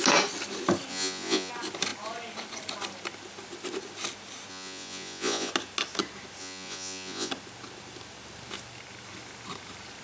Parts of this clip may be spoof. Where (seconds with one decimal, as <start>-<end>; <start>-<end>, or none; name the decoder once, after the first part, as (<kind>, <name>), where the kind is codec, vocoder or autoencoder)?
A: 0.9-1.5 (vocoder, Vocos); 4.5-5.5; 6.4-7.3